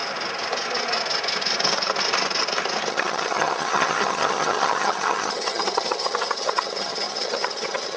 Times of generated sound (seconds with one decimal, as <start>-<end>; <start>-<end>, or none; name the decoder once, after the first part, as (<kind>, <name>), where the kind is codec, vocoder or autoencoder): 2.9-8.0 (vocoder, HiFi-GAN)